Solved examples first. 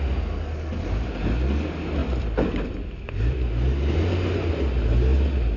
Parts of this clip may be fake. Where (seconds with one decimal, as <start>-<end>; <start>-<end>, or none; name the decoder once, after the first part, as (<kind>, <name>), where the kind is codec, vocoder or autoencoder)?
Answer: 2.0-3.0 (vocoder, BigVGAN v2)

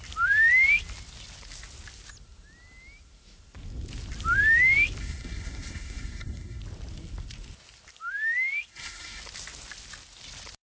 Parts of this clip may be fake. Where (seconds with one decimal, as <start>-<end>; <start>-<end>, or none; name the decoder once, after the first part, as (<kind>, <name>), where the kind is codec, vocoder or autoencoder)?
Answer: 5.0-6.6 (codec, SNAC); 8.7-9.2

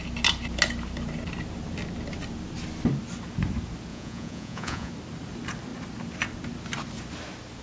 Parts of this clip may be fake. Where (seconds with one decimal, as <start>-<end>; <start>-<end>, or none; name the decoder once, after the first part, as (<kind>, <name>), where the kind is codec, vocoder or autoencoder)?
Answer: 3.9-4.9 (vocoder, Vocos)

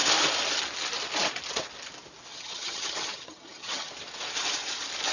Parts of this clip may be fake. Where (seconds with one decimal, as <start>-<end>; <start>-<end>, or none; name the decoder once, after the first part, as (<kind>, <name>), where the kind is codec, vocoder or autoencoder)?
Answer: 2.3-3.9 (vocoder, HiFi-GAN)

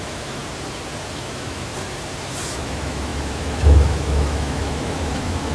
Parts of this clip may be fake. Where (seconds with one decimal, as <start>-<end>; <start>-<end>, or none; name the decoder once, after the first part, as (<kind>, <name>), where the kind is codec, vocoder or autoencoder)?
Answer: 0.0-0.4 (autoencoder, DAC-VAE); 1.1-1.7; 2.5-5.5